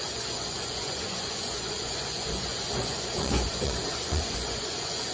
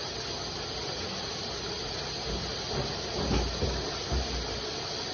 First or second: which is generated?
first